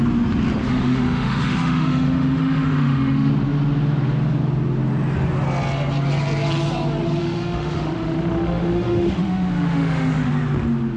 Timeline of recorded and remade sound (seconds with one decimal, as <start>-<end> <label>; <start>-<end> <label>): 0.0-0.6 recorded; 0.6-3.3 remade; 3.3-7.2 recorded; 7.2-10.3 remade; 10.3-11.0 recorded